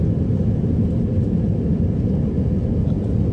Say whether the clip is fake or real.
real